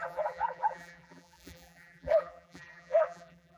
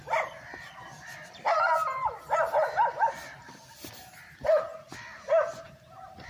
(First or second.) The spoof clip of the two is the first